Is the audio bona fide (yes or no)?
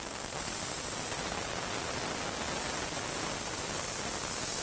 yes